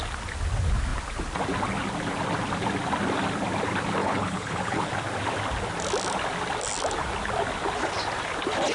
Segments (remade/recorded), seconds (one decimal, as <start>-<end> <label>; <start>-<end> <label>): 0.0-4.0 recorded; 4.0-4.9 remade; 4.9-8.7 recorded